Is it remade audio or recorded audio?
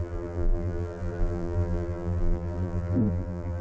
remade